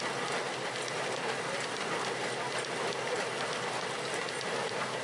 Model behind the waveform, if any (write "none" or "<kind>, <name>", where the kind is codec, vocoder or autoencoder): vocoder, BigVGAN v2